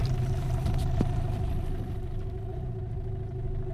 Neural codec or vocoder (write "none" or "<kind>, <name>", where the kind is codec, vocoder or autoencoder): vocoder, BigVGAN v2